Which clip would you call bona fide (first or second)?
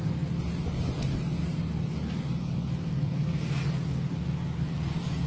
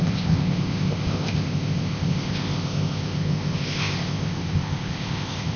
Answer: first